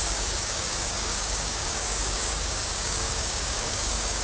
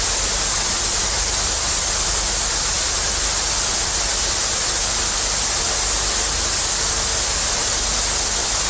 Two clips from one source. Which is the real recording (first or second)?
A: second